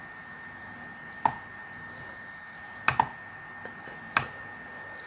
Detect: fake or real real